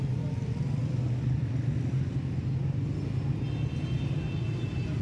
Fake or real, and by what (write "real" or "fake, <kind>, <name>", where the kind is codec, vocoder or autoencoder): real